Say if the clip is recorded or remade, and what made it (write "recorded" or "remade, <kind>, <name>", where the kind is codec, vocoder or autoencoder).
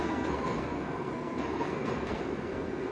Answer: remade, codec, SNAC